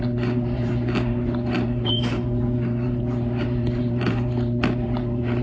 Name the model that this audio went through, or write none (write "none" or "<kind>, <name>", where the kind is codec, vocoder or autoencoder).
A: vocoder, BigVGAN v2